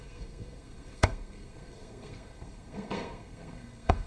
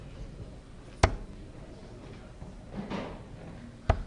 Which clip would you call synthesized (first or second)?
first